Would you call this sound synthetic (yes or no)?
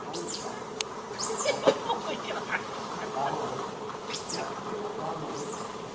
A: yes